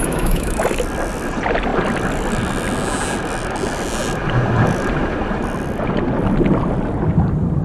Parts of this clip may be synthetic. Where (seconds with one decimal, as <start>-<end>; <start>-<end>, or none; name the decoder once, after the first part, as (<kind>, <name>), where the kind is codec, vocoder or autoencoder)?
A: 0.0-0.6 (autoencoder, DAC-VAE)

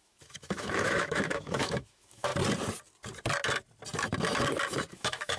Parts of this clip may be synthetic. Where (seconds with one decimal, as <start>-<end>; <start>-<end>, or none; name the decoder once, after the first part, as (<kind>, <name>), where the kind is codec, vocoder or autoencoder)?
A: 0.0-2.3 (autoencoder, DAC-VAE); 4.9-5.4